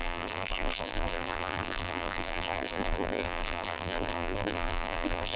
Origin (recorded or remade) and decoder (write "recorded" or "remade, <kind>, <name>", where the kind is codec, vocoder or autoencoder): remade, vocoder, BigVGAN v2